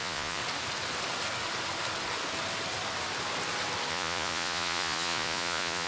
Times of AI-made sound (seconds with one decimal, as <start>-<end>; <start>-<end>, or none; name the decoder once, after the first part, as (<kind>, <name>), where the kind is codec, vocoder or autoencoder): 0.0-0.4 (vocoder, Vocos); 3.9-5.9